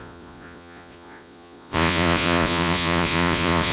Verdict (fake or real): fake